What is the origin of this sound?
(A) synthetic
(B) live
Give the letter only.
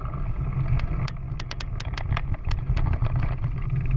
B